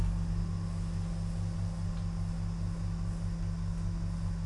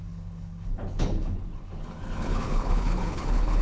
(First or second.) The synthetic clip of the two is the second